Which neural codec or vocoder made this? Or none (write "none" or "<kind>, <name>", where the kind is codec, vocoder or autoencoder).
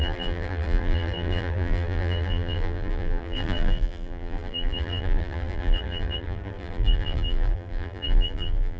vocoder, BigVGAN v2